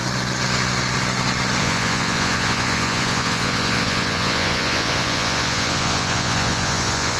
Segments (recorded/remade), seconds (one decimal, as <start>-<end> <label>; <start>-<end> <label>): 0.0-1.6 recorded; 1.6-7.2 remade